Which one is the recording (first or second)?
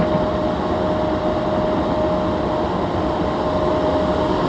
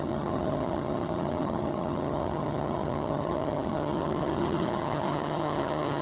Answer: first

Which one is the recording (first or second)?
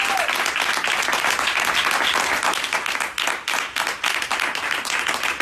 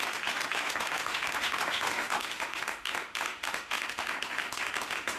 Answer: first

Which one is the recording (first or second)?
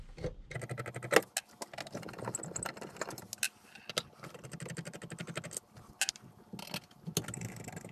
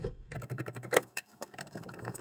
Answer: first